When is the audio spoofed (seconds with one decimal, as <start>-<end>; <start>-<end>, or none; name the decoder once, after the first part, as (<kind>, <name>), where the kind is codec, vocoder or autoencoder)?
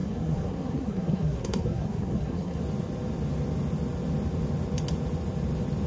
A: 0.0-2.6 (codec, SNAC)